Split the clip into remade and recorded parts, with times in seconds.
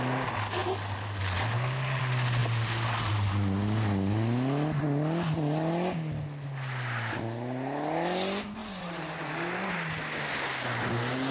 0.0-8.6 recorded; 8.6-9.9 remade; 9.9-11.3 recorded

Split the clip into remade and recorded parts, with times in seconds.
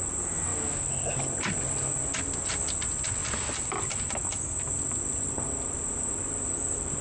0.0-7.0 recorded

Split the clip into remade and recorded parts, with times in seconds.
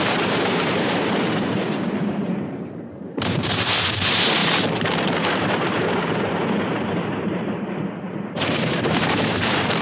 0.0-9.8 remade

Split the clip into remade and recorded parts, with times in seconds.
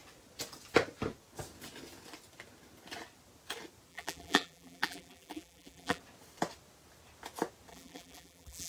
0.0-3.9 recorded; 3.9-6.0 remade; 6.0-7.7 recorded; 7.7-8.7 remade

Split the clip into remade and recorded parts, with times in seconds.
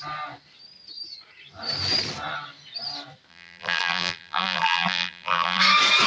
0.0-3.3 recorded; 3.3-5.6 remade; 5.6-6.1 recorded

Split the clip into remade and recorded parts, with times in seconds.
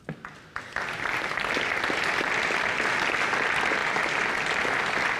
0.0-5.2 recorded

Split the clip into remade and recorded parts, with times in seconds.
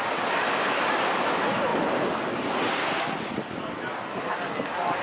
0.0-1.7 recorded; 1.7-4.2 remade; 4.2-5.0 recorded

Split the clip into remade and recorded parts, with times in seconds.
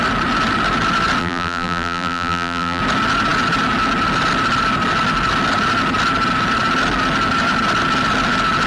0.0-1.2 recorded; 1.2-2.8 remade; 2.8-8.7 recorded